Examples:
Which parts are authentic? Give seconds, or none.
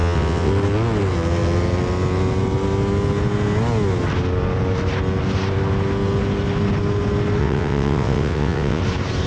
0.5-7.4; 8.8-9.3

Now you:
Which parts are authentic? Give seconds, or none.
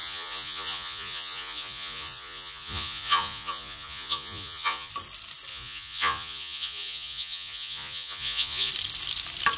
4.9-5.5; 8.7-9.6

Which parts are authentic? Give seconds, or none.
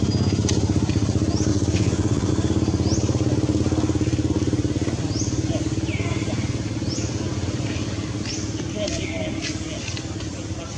0.0-1.5; 2.3-10.8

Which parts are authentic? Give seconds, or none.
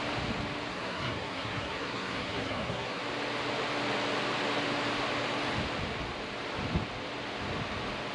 0.0-0.7; 3.0-8.1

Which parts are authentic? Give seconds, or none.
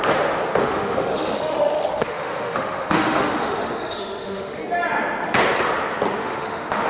0.0-0.6; 4.6-6.2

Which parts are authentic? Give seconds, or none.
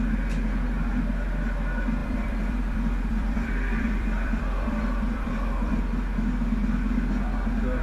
0.0-2.0; 5.8-7.8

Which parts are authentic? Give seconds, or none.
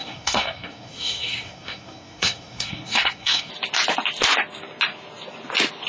3.5-5.9